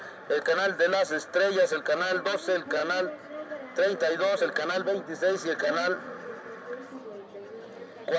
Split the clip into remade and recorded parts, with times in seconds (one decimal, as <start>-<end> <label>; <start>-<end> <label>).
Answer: 0.0-5.6 recorded; 5.6-6.4 remade; 6.4-8.2 recorded